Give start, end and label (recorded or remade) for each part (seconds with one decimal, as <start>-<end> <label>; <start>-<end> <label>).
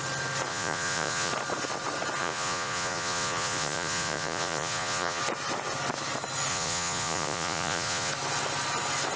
0.0-0.5 recorded; 0.5-1.3 remade; 1.3-2.2 recorded; 2.2-5.2 remade; 5.2-6.5 recorded; 6.5-8.1 remade; 8.1-9.2 recorded